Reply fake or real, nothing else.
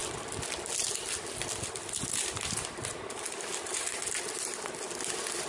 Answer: real